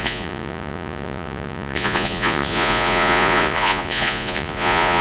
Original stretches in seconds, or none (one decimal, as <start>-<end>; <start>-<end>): none